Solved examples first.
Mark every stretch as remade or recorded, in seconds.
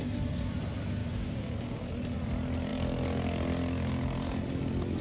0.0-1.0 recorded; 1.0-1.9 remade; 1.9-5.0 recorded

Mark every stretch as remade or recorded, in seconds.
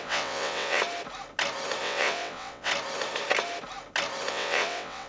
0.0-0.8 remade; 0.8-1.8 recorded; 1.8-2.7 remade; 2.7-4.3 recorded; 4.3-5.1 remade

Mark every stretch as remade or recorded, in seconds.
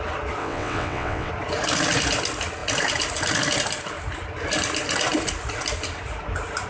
0.0-0.4 recorded; 0.4-1.3 remade; 1.3-6.7 recorded